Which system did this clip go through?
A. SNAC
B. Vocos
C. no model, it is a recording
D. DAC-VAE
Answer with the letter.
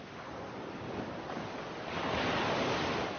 C